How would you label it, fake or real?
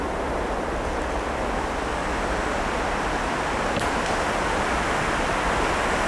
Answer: real